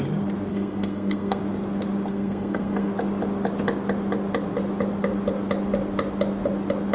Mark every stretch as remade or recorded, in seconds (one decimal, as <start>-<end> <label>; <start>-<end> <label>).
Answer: 0.0-0.5 recorded; 0.5-1.4 remade; 1.4-2.1 recorded; 2.1-2.9 remade; 2.9-6.9 recorded